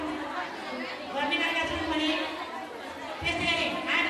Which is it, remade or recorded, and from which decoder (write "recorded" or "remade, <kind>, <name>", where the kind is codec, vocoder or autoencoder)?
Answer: recorded